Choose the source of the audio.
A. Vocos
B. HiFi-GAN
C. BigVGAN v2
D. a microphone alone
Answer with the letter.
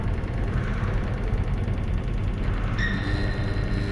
D